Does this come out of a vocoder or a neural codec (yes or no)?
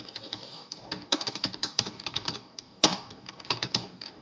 yes